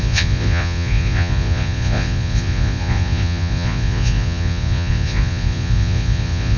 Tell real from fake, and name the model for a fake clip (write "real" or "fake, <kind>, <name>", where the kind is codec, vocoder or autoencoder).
fake, vocoder, Vocos